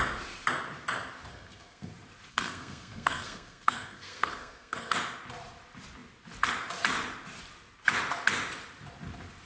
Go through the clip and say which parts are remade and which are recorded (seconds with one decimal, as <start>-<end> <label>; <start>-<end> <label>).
0.0-1.3 recorded; 1.3-1.9 remade; 1.9-2.3 recorded; 2.3-4.9 remade; 4.9-9.5 recorded